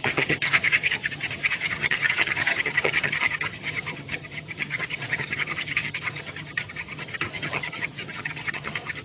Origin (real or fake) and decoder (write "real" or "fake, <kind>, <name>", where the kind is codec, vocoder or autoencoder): fake, vocoder, HiFi-GAN